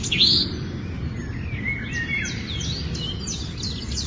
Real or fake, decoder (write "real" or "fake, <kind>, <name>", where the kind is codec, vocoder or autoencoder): real